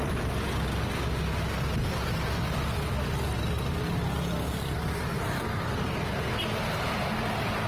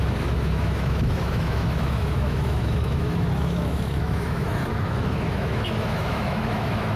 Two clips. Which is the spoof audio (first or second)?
second